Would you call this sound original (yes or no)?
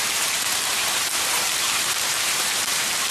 no